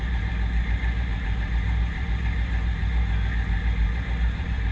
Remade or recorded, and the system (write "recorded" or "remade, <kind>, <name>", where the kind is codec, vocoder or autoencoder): remade, vocoder, BigVGAN v2